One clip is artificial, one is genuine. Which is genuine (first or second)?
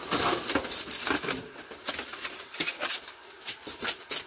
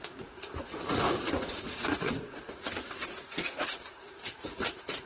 first